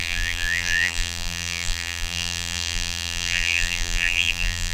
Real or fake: fake